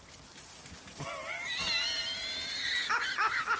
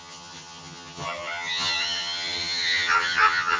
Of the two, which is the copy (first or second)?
second